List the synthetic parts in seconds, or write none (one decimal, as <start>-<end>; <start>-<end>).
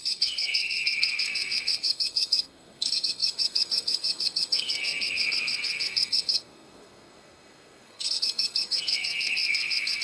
0.0-10.0